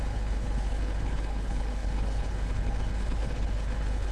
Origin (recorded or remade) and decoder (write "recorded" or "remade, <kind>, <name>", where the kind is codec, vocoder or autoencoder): remade, codec, HILCodec